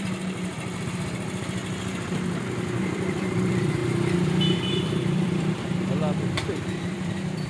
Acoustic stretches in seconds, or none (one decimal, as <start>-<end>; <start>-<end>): 1.6-2.3; 3.8-4.5

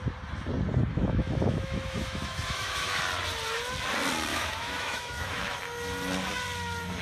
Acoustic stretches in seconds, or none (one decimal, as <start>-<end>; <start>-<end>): 0.0-0.9; 3.0-4.3; 5.6-7.0

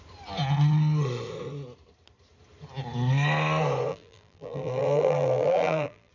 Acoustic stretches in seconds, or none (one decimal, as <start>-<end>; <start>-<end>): 0.0-3.9

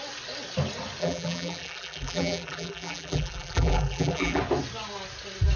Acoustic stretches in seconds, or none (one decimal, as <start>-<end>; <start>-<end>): 0.0-1.0; 4.4-5.6

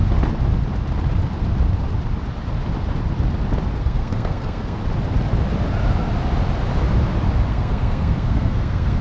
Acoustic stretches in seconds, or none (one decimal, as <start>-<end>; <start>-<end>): 0.0-3.8; 4.8-7.5

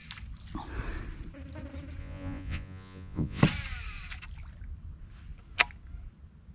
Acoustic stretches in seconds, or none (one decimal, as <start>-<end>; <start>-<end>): 0.0-2.0; 3.4-6.5